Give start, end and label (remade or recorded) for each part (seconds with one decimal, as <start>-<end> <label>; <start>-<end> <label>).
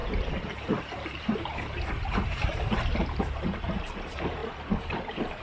0.0-5.4 remade